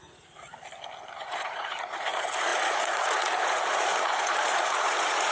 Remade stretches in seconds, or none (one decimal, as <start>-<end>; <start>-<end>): 0.0-0.5; 1.2-5.3